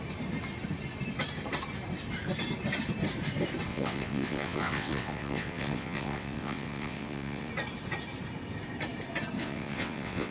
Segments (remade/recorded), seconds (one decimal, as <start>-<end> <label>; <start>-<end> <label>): 0.0-3.7 recorded; 3.7-7.5 remade; 7.5-9.4 recorded; 9.4-10.3 remade